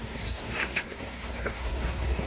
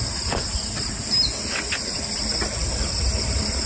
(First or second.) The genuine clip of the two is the second